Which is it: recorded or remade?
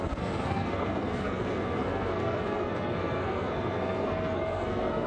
remade